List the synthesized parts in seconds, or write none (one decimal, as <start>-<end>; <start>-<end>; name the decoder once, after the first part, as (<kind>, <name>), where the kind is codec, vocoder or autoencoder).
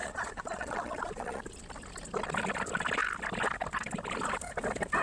0.0-1.4 (vocoder, Vocos)